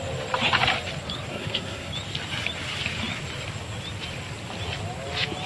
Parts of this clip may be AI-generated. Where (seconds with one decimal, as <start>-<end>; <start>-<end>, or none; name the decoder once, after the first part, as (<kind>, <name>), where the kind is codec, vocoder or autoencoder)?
1.3-1.9 (codec, SNAC)